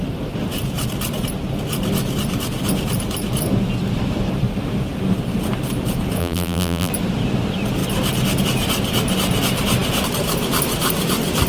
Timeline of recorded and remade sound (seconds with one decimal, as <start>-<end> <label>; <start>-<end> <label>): 0.0-6.2 recorded; 6.2-6.9 remade; 6.9-11.5 recorded